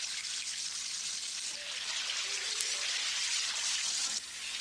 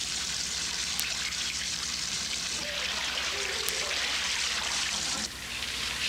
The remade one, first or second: second